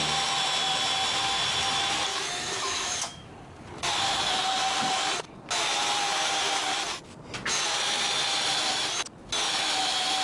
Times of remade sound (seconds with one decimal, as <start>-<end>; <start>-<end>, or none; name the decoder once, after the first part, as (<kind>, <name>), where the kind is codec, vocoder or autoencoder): 2.1-3.3 (autoencoder, DAC-VAE)